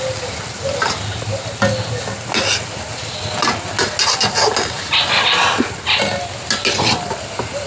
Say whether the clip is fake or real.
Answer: real